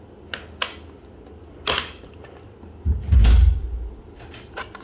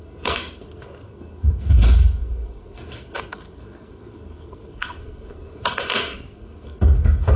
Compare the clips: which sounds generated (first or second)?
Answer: second